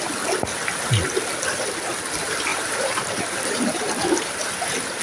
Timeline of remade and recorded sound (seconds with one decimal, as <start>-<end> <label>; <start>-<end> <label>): 0.0-2.5 recorded; 2.5-4.3 remade; 4.3-5.0 recorded